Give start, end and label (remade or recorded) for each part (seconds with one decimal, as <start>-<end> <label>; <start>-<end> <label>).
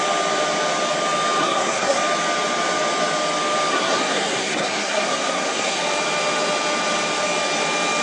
0.0-1.4 recorded; 1.4-2.0 remade; 2.0-3.7 recorded; 3.7-5.8 remade; 5.8-8.0 recorded